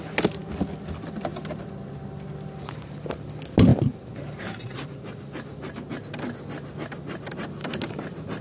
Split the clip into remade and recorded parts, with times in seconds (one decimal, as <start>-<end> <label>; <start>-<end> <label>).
0.0-3.7 recorded; 3.7-5.9 remade; 5.9-8.4 recorded